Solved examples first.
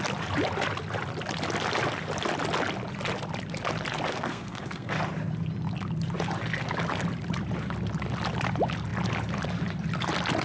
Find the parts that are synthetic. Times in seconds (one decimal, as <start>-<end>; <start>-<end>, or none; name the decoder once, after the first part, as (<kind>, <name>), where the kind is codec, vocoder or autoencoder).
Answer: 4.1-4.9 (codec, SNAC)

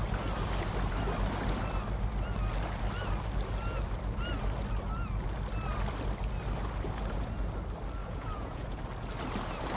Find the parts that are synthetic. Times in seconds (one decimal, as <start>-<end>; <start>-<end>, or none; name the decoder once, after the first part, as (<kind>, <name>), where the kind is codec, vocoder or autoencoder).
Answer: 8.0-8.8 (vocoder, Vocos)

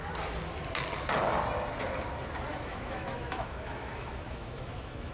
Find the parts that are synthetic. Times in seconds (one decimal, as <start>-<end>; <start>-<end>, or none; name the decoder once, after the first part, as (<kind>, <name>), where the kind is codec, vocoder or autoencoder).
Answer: 2.5-5.1 (autoencoder, DAC-VAE)

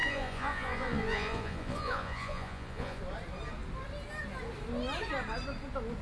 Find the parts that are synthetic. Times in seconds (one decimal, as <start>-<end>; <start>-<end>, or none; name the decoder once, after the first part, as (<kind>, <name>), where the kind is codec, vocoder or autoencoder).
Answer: 0.0-3.0 (vocoder, Vocos)

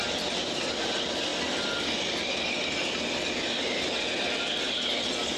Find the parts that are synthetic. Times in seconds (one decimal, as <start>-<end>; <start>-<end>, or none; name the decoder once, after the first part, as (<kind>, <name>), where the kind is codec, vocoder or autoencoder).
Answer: none